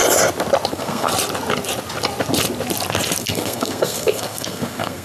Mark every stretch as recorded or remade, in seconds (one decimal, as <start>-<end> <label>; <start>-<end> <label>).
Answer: 0.0-0.7 recorded; 0.7-1.1 remade; 1.1-3.2 recorded; 3.2-5.0 remade